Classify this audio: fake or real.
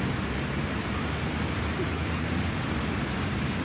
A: real